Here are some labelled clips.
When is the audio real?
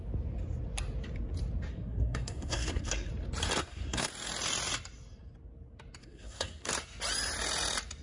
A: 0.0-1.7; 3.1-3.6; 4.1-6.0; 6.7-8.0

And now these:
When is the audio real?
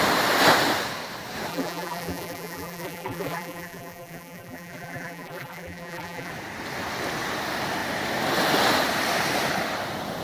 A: 0.0-1.5; 6.3-10.2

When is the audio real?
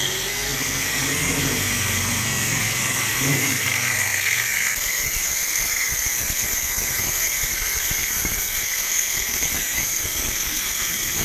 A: none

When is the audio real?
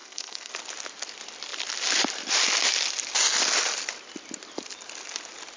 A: 0.5-5.6